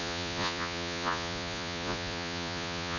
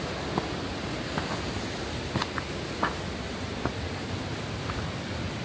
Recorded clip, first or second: second